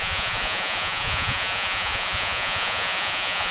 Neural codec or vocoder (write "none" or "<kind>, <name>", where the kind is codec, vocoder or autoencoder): vocoder, Vocos